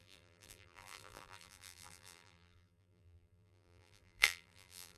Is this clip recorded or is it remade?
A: remade